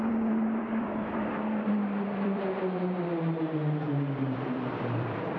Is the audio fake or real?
fake